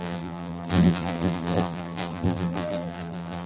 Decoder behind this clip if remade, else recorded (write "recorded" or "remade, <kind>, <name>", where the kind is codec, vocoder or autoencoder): remade, vocoder, BigVGAN v2